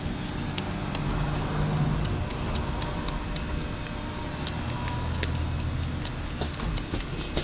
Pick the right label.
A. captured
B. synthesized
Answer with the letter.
A